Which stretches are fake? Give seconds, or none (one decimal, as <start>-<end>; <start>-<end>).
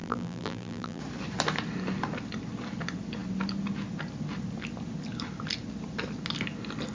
0.0-1.0